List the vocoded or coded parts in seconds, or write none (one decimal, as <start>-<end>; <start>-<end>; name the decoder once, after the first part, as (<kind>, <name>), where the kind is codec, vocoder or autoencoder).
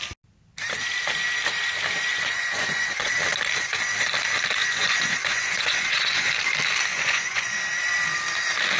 2.1-3.1 (vocoder, Vocos); 4.6-6.3; 6.9-7.6